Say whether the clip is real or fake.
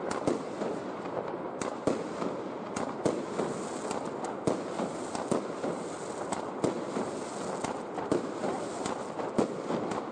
real